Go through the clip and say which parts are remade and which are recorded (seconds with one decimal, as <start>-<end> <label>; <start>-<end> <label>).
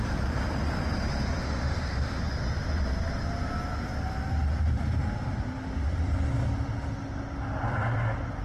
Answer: 0.0-1.4 recorded; 1.4-2.2 remade; 2.2-8.4 recorded